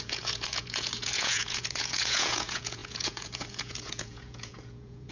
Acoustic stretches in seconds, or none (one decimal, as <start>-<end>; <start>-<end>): none